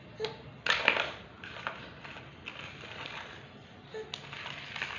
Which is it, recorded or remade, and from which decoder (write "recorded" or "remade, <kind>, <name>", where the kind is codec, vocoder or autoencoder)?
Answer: recorded